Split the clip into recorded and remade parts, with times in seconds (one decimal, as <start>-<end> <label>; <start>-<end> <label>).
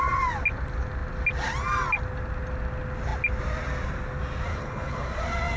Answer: 0.0-4.5 recorded; 4.5-5.1 remade; 5.1-5.6 recorded